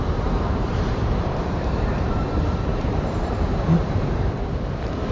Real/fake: fake